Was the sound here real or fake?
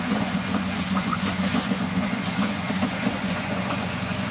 fake